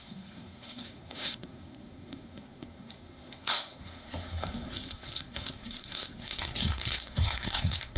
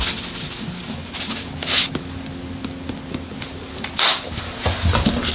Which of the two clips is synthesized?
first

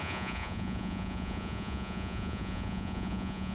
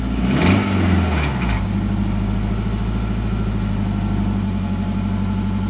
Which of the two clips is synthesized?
first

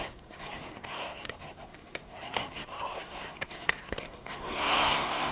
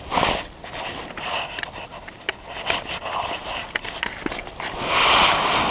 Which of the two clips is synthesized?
first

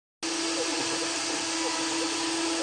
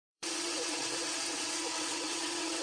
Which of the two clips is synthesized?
second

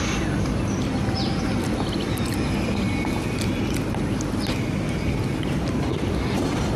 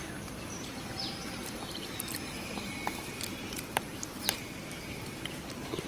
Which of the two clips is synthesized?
second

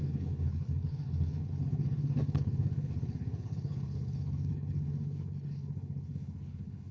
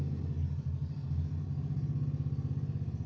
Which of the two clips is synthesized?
first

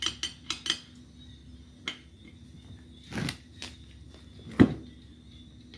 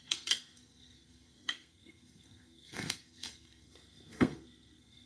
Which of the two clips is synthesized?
second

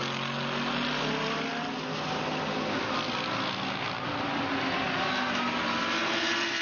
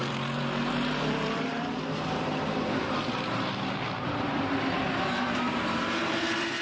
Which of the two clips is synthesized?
second